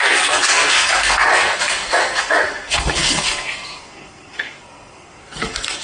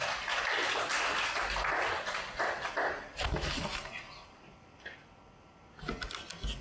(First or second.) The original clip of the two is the second